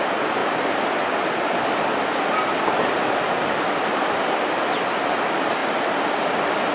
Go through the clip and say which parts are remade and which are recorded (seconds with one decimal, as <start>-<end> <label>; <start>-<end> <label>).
0.0-0.4 recorded; 0.4-2.0 remade; 2.0-5.6 recorded; 5.6-6.7 remade